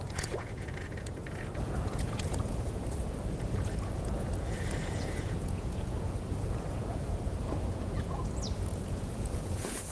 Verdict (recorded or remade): remade